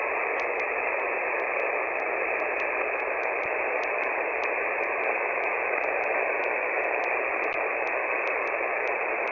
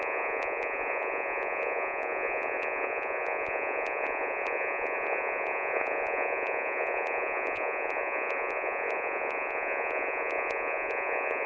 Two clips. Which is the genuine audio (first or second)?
first